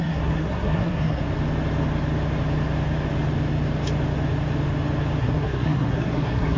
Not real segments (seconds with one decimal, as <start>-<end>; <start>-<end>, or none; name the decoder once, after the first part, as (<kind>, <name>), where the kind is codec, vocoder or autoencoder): 0.0-1.2 (codec, SNAC); 5.2-6.6